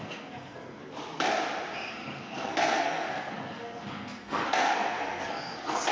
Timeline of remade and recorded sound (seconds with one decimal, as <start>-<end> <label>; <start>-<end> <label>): 0.0-0.8 remade; 0.8-1.9 recorded; 1.9-5.9 remade